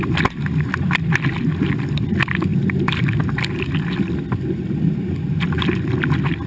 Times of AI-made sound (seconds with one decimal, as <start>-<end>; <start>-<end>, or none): none